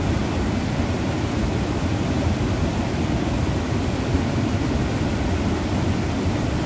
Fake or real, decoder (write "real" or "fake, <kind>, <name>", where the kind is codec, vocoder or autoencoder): real